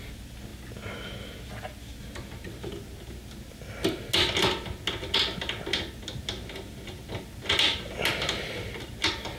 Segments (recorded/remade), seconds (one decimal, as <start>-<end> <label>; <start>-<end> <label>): 0.0-9.4 recorded